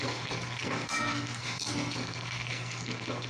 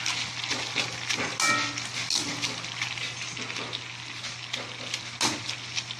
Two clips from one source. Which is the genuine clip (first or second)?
second